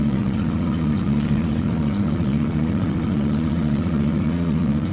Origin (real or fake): fake